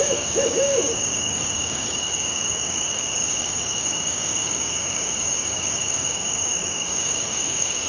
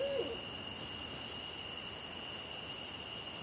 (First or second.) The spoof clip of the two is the first